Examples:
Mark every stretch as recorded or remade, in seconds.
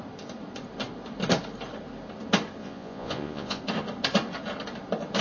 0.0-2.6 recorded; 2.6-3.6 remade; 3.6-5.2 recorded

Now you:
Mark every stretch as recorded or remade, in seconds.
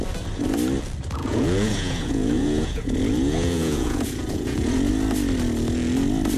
0.0-1.2 recorded; 1.2-4.9 remade; 4.9-6.4 recorded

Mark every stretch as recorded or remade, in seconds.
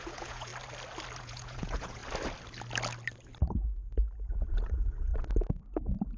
0.0-0.5 remade; 0.5-1.2 recorded; 1.2-2.0 remade; 2.0-4.5 recorded; 4.5-5.1 remade; 5.1-6.2 recorded